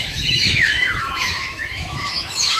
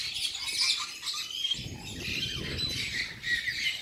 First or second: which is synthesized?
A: first